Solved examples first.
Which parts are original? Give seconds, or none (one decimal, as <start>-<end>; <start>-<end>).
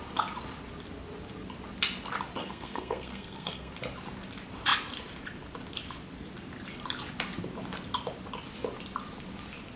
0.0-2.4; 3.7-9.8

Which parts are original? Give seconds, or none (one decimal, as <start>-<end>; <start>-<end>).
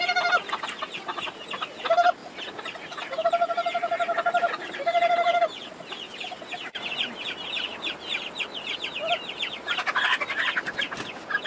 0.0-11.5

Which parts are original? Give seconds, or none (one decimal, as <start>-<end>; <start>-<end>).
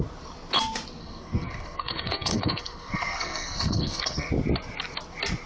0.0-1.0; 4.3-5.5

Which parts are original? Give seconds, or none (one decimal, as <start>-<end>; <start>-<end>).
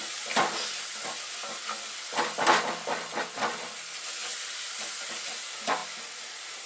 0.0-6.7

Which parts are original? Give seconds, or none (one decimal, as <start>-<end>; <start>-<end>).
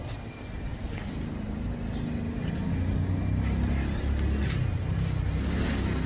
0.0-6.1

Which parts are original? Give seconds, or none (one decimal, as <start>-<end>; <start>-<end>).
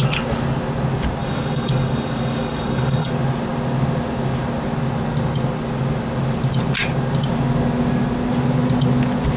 0.0-1.2; 3.1-9.4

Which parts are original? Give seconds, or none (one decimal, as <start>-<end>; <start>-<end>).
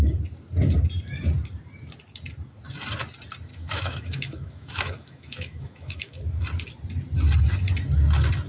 0.0-3.5; 6.2-8.5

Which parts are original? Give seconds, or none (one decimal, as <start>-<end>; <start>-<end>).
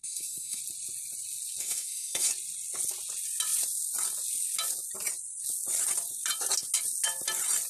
0.6-1.6; 2.3-7.7